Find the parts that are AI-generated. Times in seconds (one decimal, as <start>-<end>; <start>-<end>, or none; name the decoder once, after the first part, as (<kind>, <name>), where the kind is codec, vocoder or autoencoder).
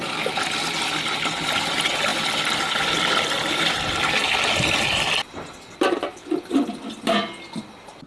none